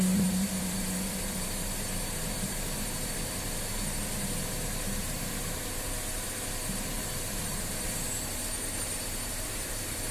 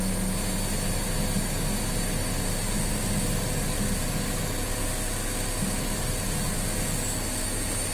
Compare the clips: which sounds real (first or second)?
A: second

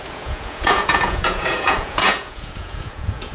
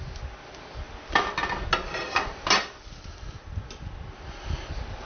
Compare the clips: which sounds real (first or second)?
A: second